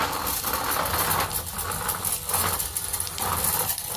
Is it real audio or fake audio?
real